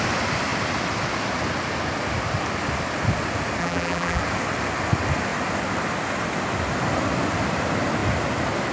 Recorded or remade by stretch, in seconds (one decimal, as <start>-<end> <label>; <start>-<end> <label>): 0.0-3.6 recorded; 3.6-4.2 remade; 4.2-8.7 recorded

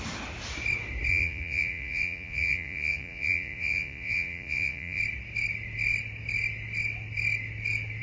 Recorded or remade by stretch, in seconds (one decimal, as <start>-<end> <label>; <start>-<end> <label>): 0.0-1.1 recorded; 1.1-5.0 remade; 5.0-8.0 recorded

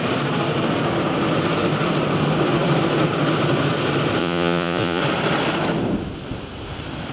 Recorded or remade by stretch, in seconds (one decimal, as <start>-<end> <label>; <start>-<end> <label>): 0.0-4.2 recorded; 4.2-5.0 remade; 5.0-7.1 recorded

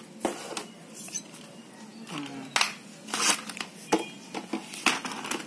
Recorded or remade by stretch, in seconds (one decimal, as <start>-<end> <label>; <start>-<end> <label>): 0.0-5.5 recorded

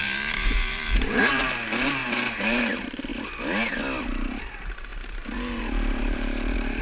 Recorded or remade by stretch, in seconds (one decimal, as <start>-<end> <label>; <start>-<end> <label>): 0.0-3.1 remade; 3.1-4.0 recorded; 4.0-6.8 remade